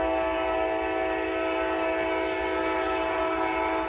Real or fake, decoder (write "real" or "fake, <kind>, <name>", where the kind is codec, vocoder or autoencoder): real